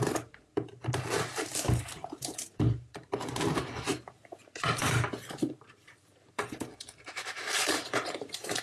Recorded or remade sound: remade